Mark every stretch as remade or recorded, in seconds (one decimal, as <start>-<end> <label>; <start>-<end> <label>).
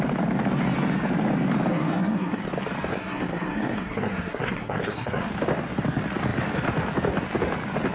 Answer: 0.0-1.7 recorded; 1.7-2.4 remade; 2.4-2.9 recorded; 2.9-5.3 remade; 5.3-7.9 recorded